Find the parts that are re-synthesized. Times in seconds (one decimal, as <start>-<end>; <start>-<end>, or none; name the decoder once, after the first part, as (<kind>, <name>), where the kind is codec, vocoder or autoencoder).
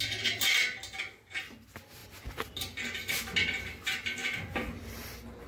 none